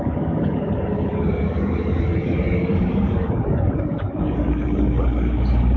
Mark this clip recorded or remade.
remade